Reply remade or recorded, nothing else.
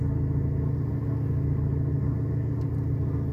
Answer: recorded